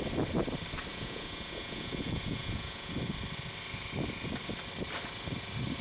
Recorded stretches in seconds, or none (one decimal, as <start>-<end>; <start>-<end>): 0.0-0.9; 2.9-5.8